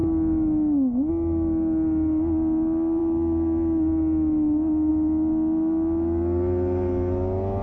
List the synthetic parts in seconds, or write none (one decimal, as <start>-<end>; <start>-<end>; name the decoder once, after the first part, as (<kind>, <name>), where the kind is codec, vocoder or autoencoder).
none